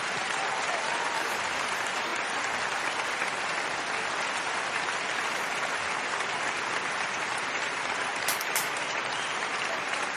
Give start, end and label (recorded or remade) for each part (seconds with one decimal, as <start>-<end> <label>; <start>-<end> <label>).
0.0-2.1 remade; 2.1-6.9 recorded; 6.9-10.2 remade